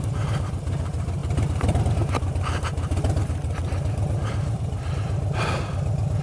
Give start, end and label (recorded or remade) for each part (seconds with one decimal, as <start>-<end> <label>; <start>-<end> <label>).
0.0-6.2 recorded